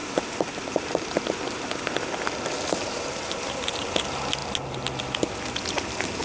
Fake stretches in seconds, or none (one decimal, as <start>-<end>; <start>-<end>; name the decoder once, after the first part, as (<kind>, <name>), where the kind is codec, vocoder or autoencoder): none